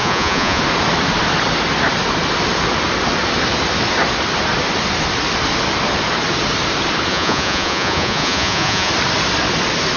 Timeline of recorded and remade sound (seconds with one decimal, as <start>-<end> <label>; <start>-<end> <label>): 0.0-0.6 remade; 0.6-7.1 recorded; 7.1-8.9 remade; 8.9-10.0 recorded